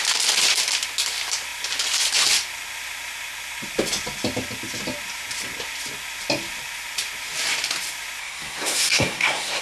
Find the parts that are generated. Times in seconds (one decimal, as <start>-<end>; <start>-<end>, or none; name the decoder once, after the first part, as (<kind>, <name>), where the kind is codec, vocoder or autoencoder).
8.2-9.6 (codec, SNAC)